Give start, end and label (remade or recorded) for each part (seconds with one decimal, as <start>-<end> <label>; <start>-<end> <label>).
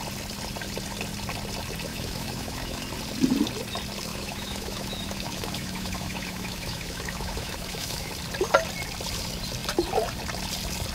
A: 0.0-1.9 recorded; 1.9-2.8 remade; 2.8-4.1 recorded; 4.1-8.1 remade; 8.1-10.9 recorded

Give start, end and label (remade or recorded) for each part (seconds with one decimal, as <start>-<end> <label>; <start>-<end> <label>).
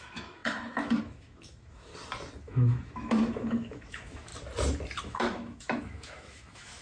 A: 0.0-1.9 remade; 1.9-2.4 recorded; 2.4-4.3 remade; 4.3-5.0 recorded; 5.0-6.8 remade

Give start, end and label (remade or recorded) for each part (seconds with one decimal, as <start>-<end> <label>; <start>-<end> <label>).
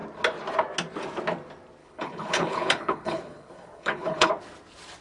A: 0.0-1.8 recorded; 1.8-4.3 remade; 4.3-5.0 recorded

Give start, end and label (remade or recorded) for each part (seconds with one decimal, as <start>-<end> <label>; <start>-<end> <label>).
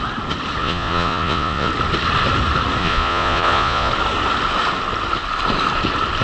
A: 0.0-0.6 recorded; 0.6-1.7 remade; 1.7-2.8 recorded; 2.8-3.9 remade; 3.9-6.2 recorded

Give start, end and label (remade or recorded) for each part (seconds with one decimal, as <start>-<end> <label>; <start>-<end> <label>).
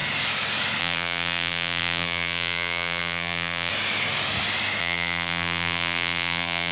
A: 0.0-0.8 recorded; 0.8-3.7 remade; 3.7-4.8 recorded; 4.8-6.7 remade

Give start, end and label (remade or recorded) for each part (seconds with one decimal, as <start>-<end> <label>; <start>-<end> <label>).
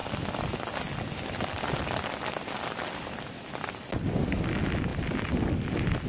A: 0.0-6.1 recorded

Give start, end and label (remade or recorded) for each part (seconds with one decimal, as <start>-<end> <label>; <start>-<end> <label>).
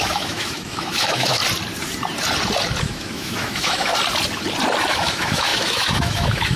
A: 0.0-1.4 remade; 1.4-2.8 recorded; 2.8-3.9 remade; 3.9-4.9 recorded; 4.9-6.6 remade